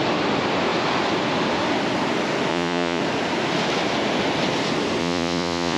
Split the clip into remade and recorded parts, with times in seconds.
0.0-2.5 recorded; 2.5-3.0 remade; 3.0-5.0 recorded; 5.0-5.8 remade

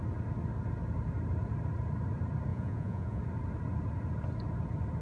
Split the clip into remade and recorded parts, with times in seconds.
0.0-2.5 recorded; 2.5-3.2 remade; 3.2-5.0 recorded